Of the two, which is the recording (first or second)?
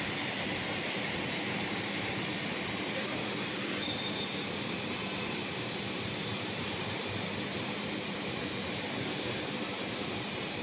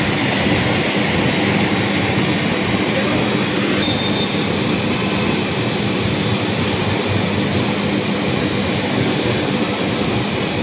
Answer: second